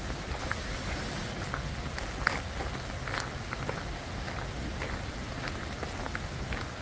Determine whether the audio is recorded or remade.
recorded